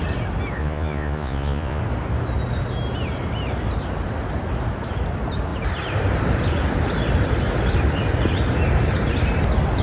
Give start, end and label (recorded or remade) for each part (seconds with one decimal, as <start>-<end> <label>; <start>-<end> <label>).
0.0-0.6 recorded; 0.6-1.8 remade; 1.8-9.8 recorded